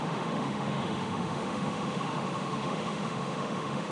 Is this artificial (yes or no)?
yes